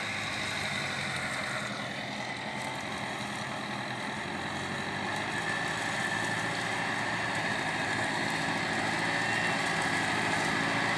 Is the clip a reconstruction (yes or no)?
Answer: no